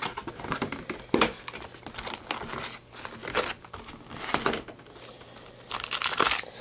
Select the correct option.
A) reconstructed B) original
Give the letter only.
B